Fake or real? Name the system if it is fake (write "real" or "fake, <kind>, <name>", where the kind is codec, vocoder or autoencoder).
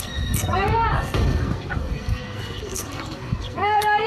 fake, codec, SNAC